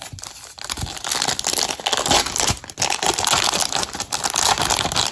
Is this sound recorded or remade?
recorded